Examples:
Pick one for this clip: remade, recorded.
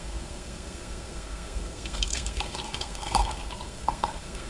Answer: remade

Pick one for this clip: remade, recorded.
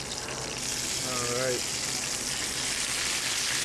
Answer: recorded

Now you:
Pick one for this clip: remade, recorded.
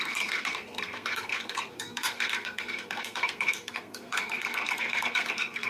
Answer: remade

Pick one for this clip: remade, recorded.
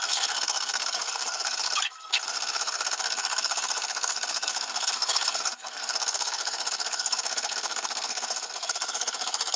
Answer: remade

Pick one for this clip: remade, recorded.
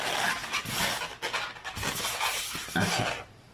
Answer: recorded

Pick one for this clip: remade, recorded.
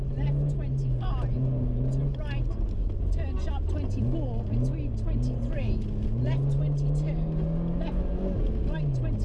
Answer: recorded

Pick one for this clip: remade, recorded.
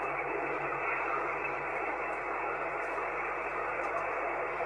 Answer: recorded